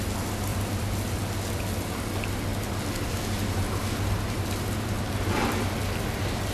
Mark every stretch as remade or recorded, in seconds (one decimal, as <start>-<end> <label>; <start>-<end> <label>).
0.0-0.5 recorded; 0.5-1.2 remade; 1.2-2.5 recorded; 2.5-5.7 remade; 5.7-6.5 recorded